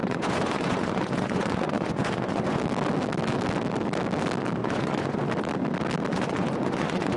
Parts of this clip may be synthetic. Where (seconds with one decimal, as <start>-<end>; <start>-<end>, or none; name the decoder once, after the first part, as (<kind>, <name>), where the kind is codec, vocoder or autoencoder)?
0.0-2.6 (vocoder, Vocos); 4.6-5.2; 6.1-7.2

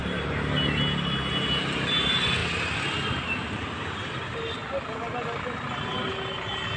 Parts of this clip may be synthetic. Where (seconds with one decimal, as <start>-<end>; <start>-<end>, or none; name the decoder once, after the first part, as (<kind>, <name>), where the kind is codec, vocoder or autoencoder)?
none

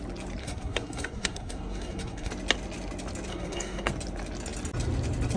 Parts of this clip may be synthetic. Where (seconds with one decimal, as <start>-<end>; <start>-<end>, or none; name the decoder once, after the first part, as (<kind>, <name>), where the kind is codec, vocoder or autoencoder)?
0.4-2.3 (codec, SNAC); 3.3-3.9

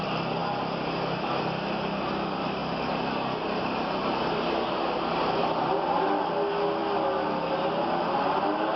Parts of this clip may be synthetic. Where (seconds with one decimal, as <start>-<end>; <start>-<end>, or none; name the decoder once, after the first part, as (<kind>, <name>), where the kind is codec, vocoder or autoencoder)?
none

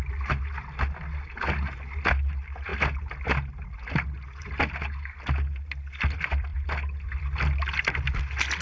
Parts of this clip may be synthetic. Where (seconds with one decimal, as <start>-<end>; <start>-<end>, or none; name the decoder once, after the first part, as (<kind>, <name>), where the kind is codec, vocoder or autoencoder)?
none

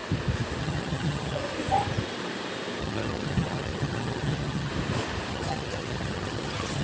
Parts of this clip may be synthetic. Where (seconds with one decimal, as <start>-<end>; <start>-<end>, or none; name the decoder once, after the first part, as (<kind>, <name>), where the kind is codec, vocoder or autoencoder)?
0.6-1.4 (vocoder, HiFi-GAN); 2.8-4.7; 5.3-6.8

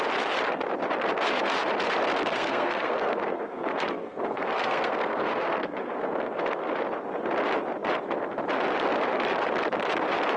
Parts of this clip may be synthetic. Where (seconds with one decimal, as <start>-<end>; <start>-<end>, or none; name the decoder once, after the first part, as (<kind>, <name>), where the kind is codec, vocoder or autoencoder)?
2.3-6.7 (codec, SNAC)

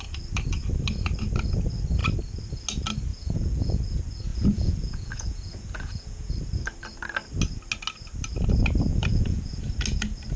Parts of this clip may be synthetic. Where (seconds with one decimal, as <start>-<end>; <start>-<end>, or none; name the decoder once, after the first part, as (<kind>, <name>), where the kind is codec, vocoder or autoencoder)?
3.1-3.8 (vocoder, Vocos); 4.3-6.3; 8.9-9.6